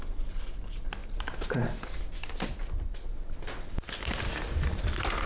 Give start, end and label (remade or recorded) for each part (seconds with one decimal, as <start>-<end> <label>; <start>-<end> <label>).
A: 0.0-5.3 recorded